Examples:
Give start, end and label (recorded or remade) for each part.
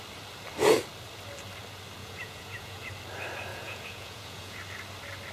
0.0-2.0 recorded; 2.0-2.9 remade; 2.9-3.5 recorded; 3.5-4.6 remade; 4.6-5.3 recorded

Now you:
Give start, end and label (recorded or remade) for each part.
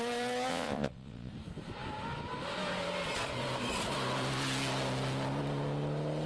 0.0-0.5 recorded; 0.5-1.3 remade; 1.3-6.3 recorded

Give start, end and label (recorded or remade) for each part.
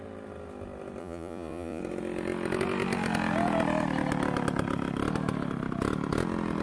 0.0-1.0 recorded; 1.0-1.8 remade; 1.8-6.6 recorded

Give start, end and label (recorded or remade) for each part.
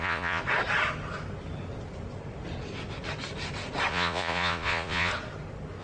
0.0-0.4 remade; 0.4-3.9 recorded; 3.9-5.1 remade; 5.1-5.8 recorded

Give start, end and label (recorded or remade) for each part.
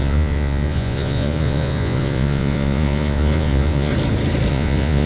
0.0-3.9 remade; 3.9-4.5 recorded; 4.5-5.1 remade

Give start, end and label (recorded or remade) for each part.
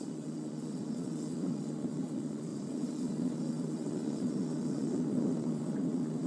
0.0-6.3 remade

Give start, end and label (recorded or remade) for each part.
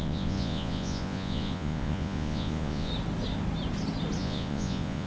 0.0-2.9 remade; 2.9-4.2 recorded; 4.2-5.1 remade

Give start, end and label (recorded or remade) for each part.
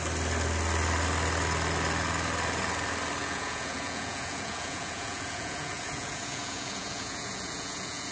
0.0-3.2 recorded; 3.2-8.1 remade